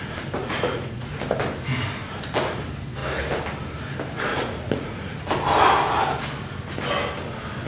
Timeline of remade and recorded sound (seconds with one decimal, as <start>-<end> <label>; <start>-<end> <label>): 0.0-0.4 recorded; 0.4-1.1 remade; 1.1-4.3 recorded; 4.3-5.2 remade; 5.2-7.7 recorded